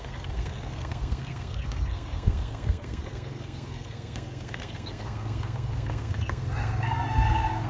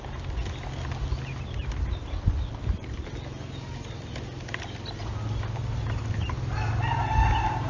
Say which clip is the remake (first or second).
first